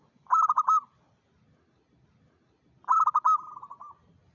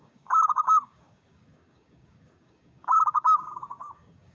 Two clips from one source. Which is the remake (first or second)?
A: second